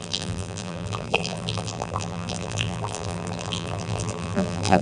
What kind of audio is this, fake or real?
fake